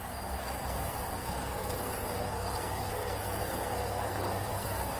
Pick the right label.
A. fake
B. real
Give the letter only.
A